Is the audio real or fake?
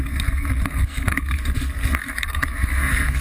fake